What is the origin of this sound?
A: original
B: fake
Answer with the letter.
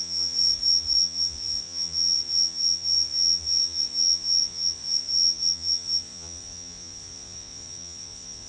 B